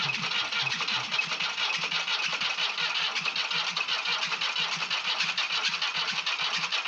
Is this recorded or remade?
recorded